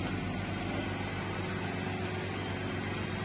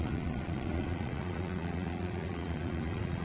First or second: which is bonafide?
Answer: first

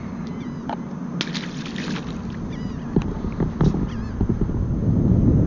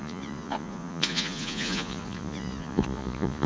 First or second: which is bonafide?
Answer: first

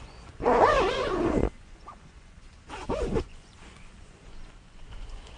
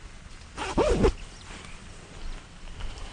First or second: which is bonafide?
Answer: second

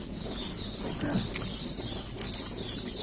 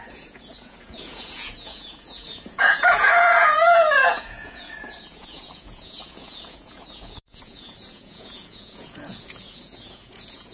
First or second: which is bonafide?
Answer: first